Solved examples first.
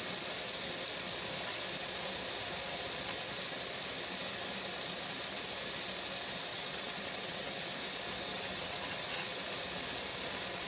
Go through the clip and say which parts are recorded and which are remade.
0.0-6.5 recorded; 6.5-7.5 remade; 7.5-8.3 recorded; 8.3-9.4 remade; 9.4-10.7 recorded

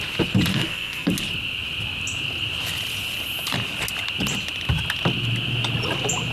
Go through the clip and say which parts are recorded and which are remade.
0.0-0.5 recorded; 0.5-1.1 remade; 1.1-6.3 recorded